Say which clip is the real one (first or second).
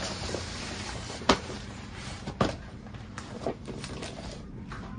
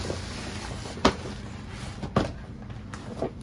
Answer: second